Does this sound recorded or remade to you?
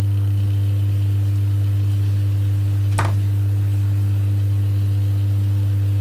recorded